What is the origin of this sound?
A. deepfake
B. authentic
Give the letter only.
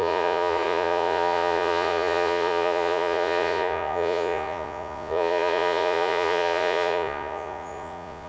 A